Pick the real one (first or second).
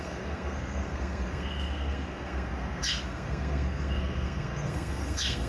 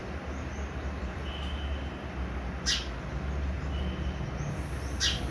second